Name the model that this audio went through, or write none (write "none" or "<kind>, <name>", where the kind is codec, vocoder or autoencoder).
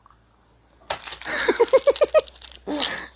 none